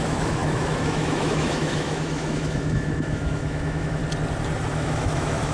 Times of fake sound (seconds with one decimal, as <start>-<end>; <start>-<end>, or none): 0.0-4.0; 4.7-5.5